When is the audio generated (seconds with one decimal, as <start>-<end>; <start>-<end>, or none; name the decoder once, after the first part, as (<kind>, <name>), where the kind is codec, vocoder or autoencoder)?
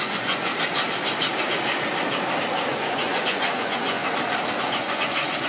0.0-0.5 (vocoder, Vocos); 2.7-4.0; 4.6-5.5